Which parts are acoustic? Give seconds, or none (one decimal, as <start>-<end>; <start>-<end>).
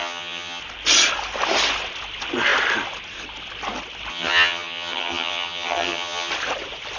0.6-4.1; 6.3-7.0